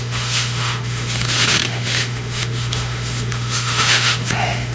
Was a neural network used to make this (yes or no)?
yes